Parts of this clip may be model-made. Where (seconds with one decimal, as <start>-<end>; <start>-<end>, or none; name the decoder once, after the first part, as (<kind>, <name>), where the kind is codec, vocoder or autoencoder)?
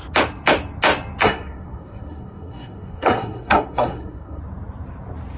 1.2-4.4 (codec, SNAC)